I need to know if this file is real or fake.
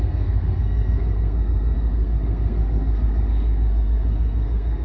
fake